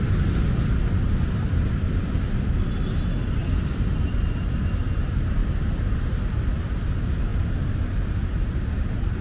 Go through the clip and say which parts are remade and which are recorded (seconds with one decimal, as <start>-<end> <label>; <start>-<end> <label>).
0.0-9.2 recorded